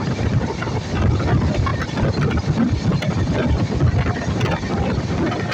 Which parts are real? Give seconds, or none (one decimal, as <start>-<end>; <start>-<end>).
1.1-5.5